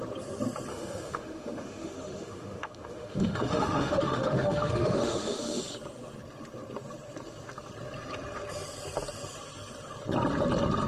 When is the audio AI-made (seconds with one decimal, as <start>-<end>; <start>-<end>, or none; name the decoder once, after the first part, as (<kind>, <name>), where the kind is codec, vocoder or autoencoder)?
0.7-5.6 (autoencoder, DAC-VAE)

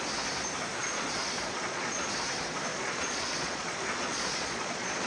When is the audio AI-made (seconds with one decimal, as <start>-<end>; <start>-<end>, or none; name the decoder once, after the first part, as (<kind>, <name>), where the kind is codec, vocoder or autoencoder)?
0.8-2.1 (vocoder, Vocos); 2.7-5.1

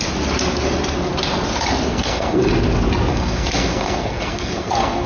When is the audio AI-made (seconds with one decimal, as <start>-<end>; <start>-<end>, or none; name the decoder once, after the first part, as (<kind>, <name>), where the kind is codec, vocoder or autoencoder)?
1.9-2.5 (codec, SNAC); 3.1-5.1

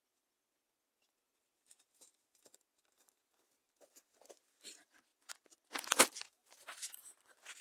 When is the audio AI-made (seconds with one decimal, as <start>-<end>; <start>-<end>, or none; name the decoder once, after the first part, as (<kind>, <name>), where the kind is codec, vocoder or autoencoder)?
none

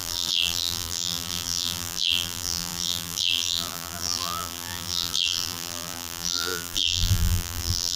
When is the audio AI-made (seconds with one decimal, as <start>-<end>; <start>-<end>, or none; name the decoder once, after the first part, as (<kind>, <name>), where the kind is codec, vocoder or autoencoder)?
0.0-8.0 (vocoder, BigVGAN v2)

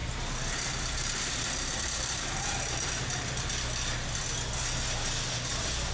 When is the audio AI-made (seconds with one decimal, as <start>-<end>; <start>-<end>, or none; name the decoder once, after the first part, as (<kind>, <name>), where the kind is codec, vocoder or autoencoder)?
0.0-3.5 (vocoder, BigVGAN v2)